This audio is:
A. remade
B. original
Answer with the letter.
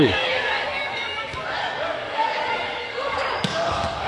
A